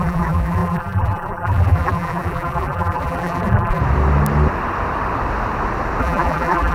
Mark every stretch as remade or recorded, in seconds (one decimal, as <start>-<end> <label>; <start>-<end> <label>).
0.0-3.8 remade; 3.8-6.0 recorded; 6.0-6.7 remade